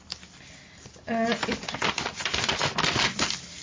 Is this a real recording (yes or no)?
yes